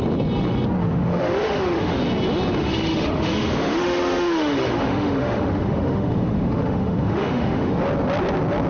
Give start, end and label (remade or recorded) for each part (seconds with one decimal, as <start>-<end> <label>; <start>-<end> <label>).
0.0-0.8 recorded; 0.8-2.0 remade; 2.0-2.6 recorded; 2.6-7.8 remade; 7.8-8.7 recorded